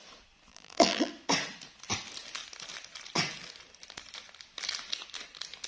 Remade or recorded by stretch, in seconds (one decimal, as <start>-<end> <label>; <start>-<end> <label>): 0.0-0.5 recorded; 0.5-1.1 remade; 1.1-5.7 recorded